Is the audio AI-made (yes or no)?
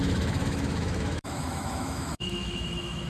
yes